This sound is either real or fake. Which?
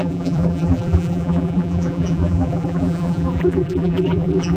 fake